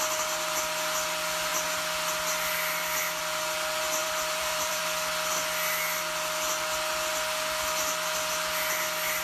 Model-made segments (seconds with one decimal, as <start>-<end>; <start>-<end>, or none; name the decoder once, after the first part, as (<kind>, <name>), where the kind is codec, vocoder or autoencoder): 4.0-4.8 (vocoder, BigVGAN v2)